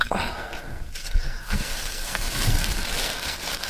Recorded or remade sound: remade